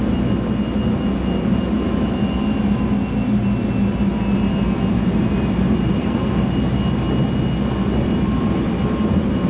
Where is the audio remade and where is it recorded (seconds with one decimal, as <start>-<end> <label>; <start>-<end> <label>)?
0.0-6.0 recorded; 6.0-6.5 remade; 6.5-9.5 recorded